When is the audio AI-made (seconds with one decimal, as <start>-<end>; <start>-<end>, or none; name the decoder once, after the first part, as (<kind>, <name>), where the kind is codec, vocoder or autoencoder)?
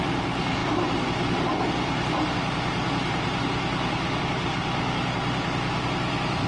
none